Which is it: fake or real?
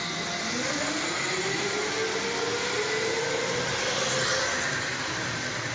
real